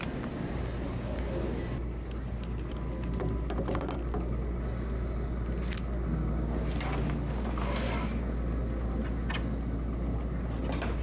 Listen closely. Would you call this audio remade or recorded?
recorded